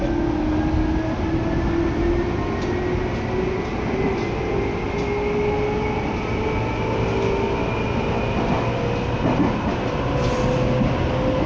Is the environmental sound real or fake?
real